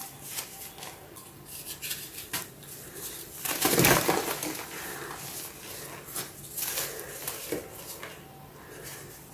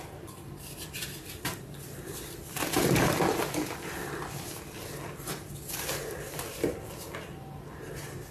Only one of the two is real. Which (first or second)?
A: first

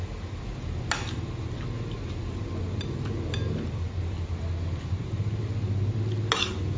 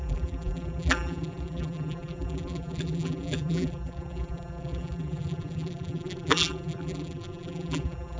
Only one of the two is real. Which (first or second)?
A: first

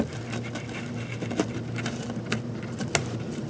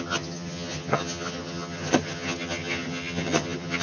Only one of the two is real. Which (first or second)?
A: first